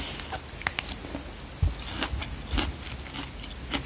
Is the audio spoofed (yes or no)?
no